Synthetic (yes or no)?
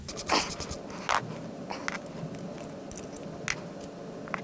no